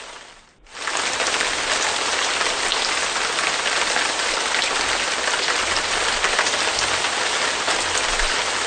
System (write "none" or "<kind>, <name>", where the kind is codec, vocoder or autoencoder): none